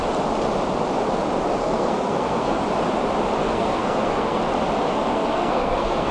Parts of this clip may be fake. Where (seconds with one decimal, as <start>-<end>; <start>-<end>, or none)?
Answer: 1.6-2.6; 3.4-4.4; 4.9-6.1